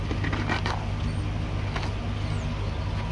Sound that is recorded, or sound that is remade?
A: recorded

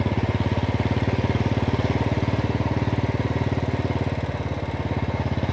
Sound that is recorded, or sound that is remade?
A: recorded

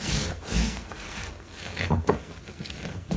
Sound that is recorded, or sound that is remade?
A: remade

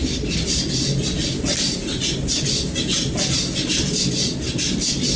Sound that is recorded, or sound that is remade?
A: recorded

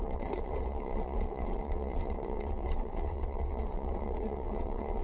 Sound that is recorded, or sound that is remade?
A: remade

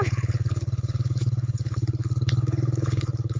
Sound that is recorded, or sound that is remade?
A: remade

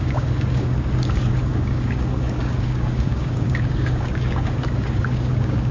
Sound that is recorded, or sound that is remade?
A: remade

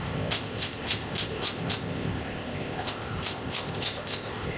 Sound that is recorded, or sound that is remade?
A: remade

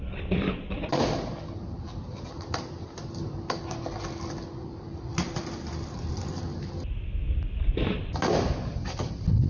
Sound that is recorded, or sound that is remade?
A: recorded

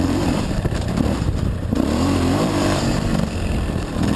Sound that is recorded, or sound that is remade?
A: remade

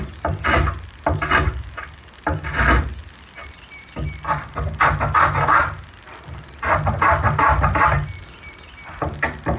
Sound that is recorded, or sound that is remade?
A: recorded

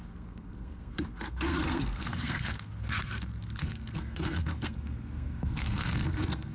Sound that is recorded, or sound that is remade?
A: remade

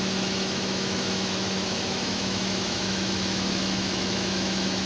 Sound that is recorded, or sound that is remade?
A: remade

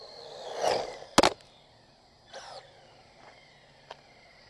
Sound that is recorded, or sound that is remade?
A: recorded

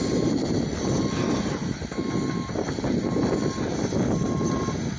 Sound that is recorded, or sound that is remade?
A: recorded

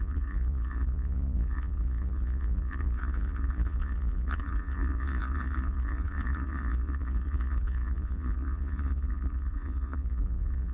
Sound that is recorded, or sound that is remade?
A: remade